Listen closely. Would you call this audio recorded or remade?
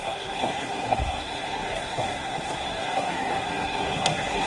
remade